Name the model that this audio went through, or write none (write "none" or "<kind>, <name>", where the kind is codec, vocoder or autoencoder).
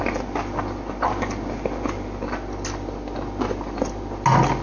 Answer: none